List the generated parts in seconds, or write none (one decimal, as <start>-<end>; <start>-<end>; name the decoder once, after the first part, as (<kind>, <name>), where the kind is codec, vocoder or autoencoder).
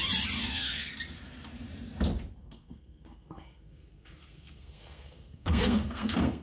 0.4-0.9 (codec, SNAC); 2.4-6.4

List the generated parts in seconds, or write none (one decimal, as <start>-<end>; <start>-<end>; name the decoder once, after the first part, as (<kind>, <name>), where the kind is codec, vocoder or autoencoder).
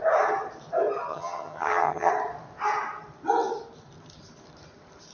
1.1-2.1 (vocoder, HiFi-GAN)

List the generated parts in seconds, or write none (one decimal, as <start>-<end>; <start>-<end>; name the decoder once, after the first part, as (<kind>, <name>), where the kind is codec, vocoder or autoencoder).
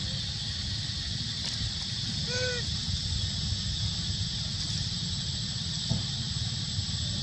none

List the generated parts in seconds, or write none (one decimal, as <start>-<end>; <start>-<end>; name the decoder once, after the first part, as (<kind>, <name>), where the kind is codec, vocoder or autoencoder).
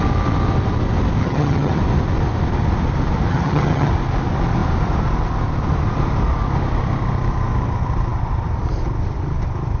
1.2-1.8 (vocoder, HiFi-GAN); 3.3-3.9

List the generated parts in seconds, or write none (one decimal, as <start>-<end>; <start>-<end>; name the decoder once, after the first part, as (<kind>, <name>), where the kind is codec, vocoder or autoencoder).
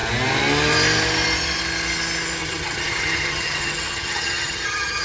2.4-5.0 (vocoder, HiFi-GAN)